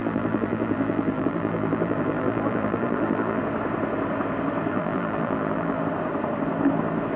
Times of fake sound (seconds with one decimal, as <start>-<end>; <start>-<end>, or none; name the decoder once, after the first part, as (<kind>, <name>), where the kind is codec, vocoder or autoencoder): 0.0-3.4 (vocoder, BigVGAN v2); 4.7-5.8